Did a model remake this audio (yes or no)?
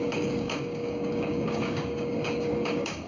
yes